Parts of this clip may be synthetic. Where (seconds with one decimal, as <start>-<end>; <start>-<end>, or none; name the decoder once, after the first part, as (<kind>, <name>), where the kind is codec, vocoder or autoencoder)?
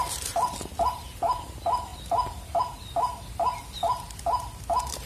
none